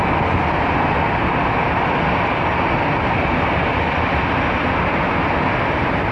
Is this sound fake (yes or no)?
no